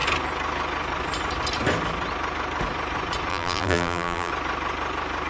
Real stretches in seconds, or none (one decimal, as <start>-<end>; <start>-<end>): 0.0-3.3; 4.3-5.3